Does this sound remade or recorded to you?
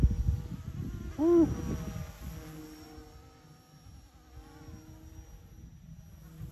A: recorded